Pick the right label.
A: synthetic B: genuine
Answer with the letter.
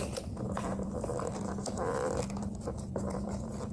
A